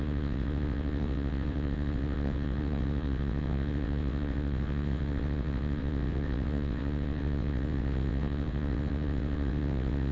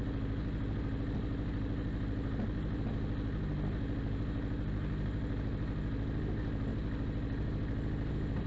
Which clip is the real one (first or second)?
second